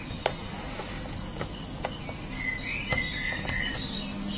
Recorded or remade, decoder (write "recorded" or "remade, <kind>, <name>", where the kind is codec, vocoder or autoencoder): recorded